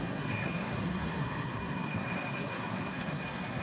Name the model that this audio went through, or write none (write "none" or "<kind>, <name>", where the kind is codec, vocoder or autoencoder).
codec, SNAC